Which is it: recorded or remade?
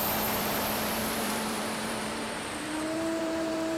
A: remade